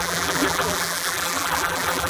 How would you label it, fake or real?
fake